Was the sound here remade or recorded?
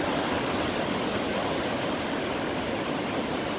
recorded